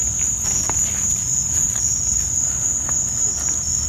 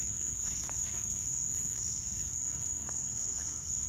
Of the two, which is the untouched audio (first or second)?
first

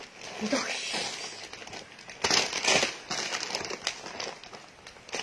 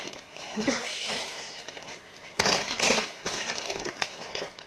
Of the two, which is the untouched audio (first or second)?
first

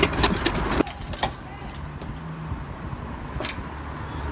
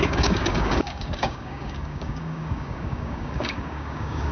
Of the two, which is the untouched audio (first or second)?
first